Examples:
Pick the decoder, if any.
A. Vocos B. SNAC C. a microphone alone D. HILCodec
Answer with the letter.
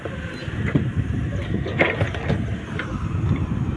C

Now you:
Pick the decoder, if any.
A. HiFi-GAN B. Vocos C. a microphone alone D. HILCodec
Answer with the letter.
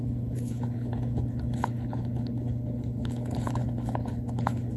D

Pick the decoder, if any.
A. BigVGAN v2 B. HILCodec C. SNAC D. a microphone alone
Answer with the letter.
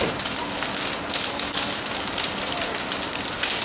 D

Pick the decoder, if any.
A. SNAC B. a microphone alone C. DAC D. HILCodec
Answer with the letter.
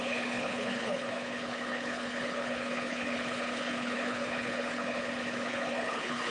D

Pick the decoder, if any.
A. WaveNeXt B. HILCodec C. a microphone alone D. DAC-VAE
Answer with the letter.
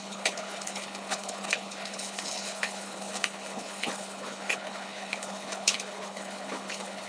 B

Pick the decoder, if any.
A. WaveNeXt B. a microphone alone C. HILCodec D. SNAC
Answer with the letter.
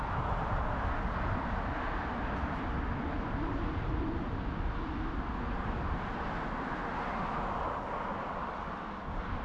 B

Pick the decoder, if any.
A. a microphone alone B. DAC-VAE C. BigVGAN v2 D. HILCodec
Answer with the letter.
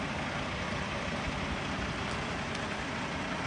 A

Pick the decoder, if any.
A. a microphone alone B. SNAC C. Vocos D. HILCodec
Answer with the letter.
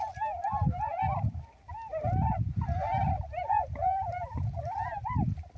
A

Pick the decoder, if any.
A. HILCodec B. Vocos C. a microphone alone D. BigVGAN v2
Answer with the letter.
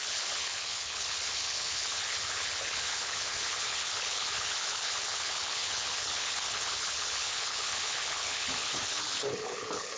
A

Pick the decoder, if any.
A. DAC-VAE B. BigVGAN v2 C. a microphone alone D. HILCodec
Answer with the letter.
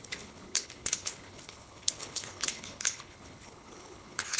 D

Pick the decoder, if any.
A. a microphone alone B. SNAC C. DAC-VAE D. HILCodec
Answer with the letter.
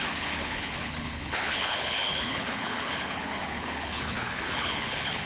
D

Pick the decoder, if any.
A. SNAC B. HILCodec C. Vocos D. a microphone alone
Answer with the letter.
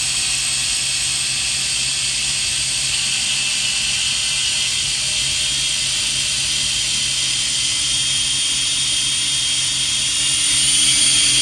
D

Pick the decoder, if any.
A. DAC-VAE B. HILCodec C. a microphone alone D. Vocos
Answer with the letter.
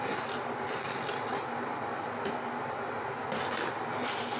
C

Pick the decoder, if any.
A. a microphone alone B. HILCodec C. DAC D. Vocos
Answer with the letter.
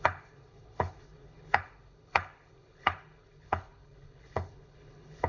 B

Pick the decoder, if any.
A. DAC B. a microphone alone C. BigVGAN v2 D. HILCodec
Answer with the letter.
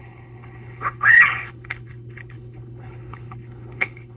D